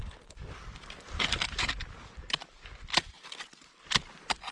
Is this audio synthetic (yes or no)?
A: no